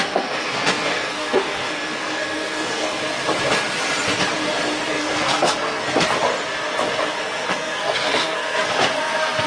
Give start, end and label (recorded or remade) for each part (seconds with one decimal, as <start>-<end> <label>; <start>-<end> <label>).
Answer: 0.0-3.0 remade; 3.0-4.9 recorded; 4.9-5.8 remade; 5.8-7.2 recorded; 7.2-9.5 remade